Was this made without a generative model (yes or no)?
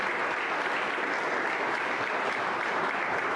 no